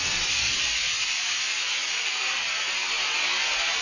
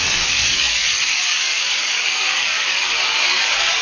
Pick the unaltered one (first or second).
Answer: first